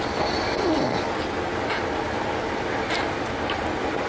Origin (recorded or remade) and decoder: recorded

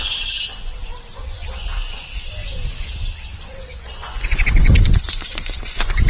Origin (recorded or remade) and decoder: remade, vocoder, Vocos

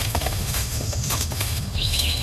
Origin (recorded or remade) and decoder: remade, autoencoder, DAC-VAE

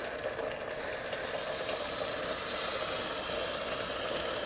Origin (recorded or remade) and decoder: recorded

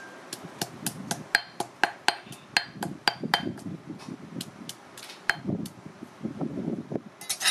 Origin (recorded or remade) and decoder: recorded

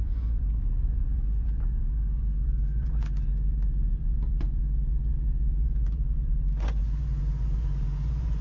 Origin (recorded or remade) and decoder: remade, vocoder, Vocos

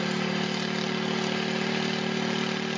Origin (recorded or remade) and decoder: recorded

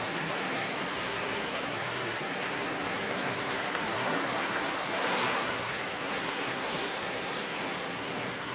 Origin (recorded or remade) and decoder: remade, codec, SNAC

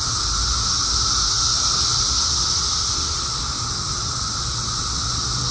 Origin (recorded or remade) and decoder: recorded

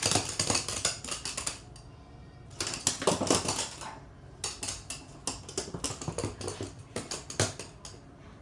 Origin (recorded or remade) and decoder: recorded